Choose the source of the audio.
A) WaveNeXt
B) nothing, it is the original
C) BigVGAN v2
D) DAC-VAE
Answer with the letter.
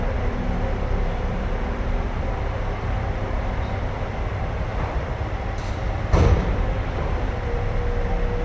C